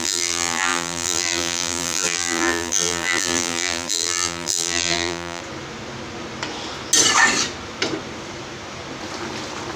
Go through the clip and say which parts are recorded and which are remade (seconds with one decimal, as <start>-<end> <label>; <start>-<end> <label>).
0.0-5.4 remade; 5.4-9.8 recorded